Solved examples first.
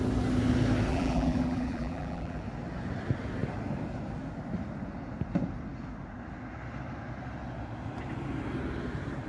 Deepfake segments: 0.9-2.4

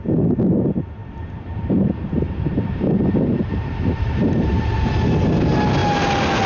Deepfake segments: 1.0-4.9